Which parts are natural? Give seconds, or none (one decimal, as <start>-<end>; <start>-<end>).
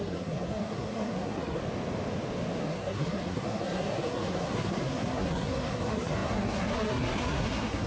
1.6-2.6